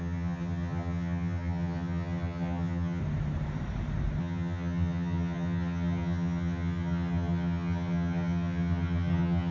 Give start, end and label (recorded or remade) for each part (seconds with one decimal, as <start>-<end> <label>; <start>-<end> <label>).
0.0-3.0 remade; 3.0-4.2 recorded; 4.2-9.5 remade